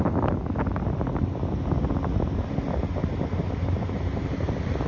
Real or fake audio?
real